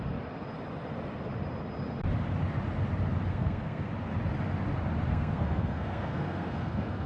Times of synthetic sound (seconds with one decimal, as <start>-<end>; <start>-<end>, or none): 3.3-3.9; 5.1-7.1